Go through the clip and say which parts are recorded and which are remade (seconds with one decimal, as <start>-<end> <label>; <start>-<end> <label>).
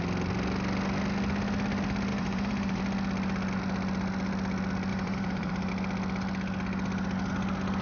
0.0-2.1 recorded; 2.1-2.8 remade; 2.8-4.9 recorded; 4.9-5.7 remade; 5.7-7.8 recorded